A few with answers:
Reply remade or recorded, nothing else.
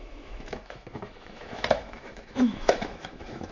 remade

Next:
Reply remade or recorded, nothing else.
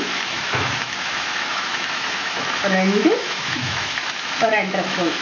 remade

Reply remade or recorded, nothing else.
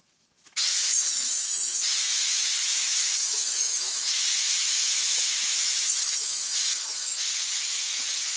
remade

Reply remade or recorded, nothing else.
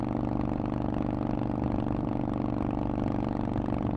recorded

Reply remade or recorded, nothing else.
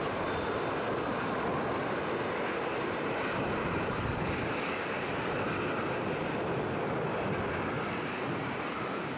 recorded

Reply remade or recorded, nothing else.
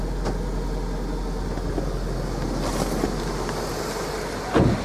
recorded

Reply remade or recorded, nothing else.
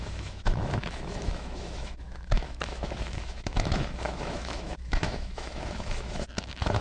remade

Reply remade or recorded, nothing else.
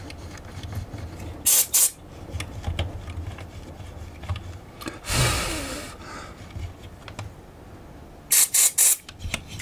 recorded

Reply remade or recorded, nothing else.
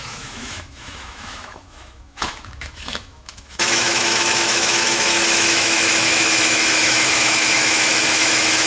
remade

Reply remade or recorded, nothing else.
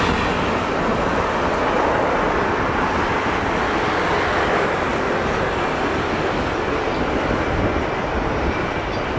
recorded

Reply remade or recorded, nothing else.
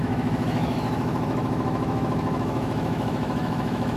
remade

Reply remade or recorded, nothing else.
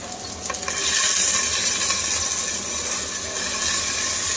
recorded